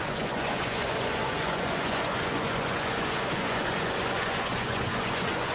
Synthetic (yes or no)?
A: yes